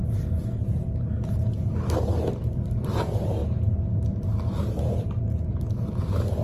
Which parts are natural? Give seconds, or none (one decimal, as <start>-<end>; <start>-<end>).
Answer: 0.0-2.0; 3.4-5.2